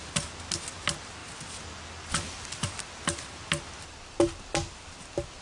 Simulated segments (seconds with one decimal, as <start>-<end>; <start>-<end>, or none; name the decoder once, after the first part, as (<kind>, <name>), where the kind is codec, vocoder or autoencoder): none